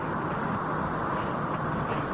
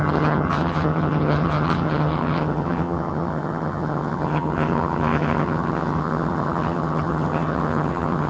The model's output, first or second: second